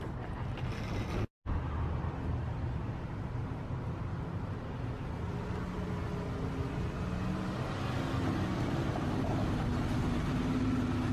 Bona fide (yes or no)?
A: yes